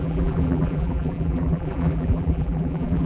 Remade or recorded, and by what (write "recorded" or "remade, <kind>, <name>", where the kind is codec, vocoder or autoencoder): remade, vocoder, BigVGAN v2